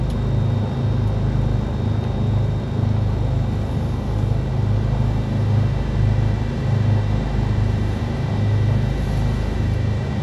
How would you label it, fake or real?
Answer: real